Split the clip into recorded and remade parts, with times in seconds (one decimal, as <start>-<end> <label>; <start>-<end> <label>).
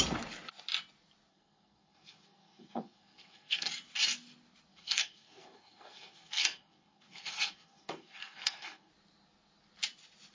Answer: 0.0-1.3 recorded; 1.3-3.7 remade; 3.7-4.7 recorded; 4.7-8.9 remade; 8.9-10.3 recorded